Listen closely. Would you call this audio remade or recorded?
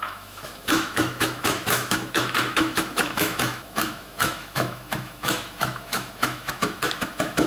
remade